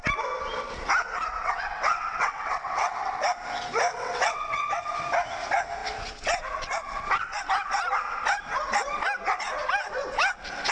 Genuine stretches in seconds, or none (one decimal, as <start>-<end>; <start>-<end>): 0.0-1.4; 3.1-3.9; 4.8-10.7